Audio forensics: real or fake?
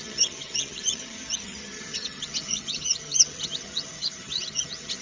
fake